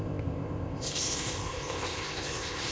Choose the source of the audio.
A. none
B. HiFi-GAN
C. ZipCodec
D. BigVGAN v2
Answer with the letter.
C